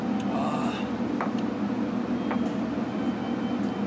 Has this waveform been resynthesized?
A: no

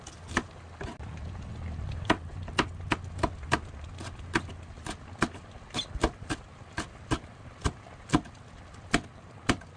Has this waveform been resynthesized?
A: no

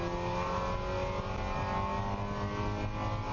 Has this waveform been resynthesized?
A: no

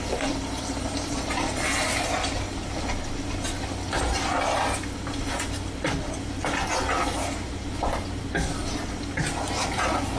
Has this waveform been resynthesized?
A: no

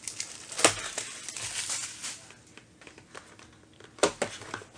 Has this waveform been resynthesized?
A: no